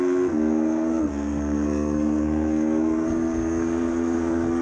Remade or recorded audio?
remade